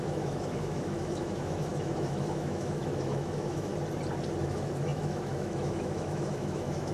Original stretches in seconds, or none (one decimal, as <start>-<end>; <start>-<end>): 3.7-4.4